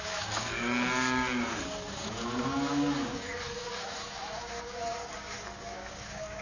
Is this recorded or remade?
remade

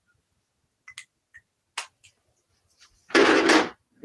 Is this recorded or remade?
recorded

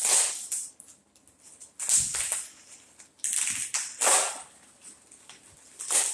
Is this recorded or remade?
recorded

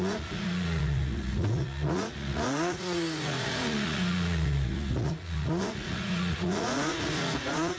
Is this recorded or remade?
remade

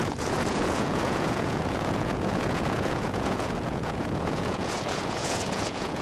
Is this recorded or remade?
remade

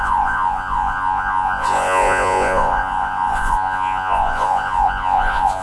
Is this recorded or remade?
remade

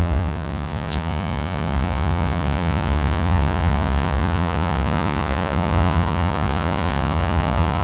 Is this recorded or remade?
remade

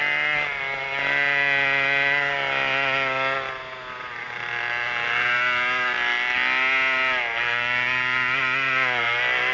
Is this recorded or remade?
recorded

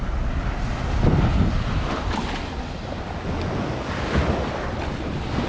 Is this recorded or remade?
recorded